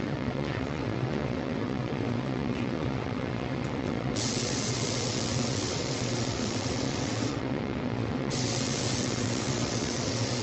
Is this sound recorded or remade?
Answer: remade